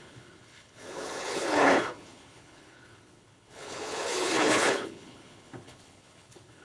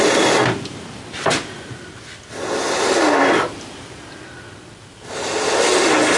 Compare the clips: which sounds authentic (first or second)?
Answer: second